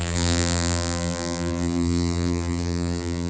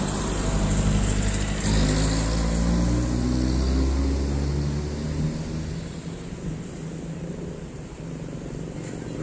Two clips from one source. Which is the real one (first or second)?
second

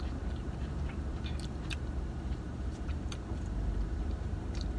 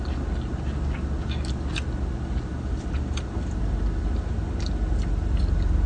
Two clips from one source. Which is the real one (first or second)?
second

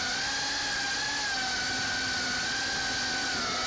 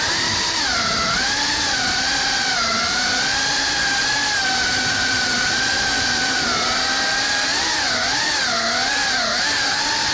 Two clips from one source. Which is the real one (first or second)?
first